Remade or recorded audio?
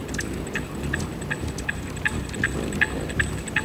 recorded